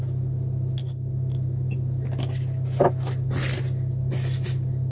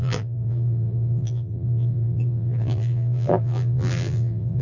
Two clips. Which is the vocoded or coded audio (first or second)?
second